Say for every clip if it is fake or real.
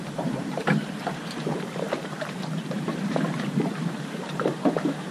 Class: fake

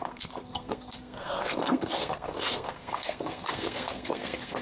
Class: fake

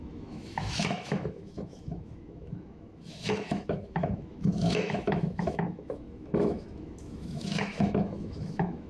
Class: fake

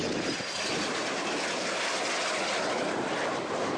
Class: real